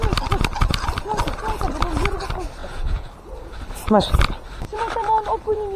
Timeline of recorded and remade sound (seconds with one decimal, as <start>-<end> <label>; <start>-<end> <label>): 0.0-2.6 recorded; 2.6-3.1 remade; 3.1-5.8 recorded